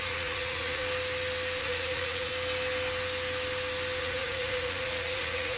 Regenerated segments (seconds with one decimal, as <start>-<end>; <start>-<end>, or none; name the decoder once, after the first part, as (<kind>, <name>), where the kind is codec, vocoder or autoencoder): 0.0-0.8 (vocoder, Vocos); 1.6-2.3; 4.0-5.6